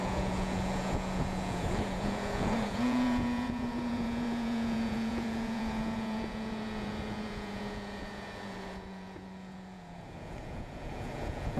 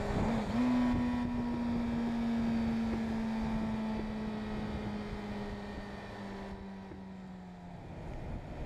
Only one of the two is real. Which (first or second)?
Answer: second